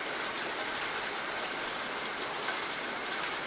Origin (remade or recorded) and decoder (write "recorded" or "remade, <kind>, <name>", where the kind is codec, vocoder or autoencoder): recorded